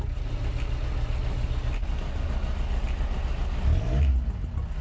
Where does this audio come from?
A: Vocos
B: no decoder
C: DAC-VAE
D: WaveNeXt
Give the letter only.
B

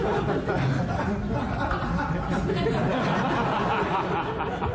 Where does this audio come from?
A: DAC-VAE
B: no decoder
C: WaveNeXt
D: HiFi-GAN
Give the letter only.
B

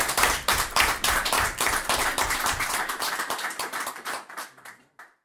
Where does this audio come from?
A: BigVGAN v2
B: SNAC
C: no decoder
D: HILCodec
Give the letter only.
A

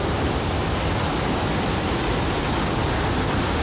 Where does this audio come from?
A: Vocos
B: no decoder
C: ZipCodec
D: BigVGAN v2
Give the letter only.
B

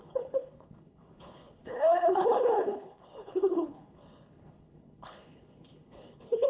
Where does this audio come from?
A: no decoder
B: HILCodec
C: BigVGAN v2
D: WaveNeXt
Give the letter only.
B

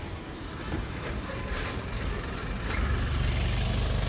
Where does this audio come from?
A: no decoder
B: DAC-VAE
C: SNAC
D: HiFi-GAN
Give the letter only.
A